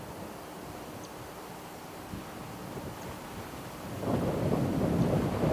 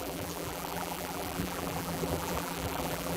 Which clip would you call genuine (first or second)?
first